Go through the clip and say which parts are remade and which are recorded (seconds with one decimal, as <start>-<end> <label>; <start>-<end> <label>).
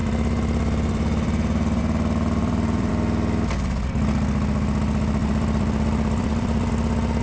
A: 0.0-1.8 remade; 1.8-2.4 recorded; 2.4-2.9 remade; 2.9-5.2 recorded; 5.2-6.7 remade; 6.7-7.2 recorded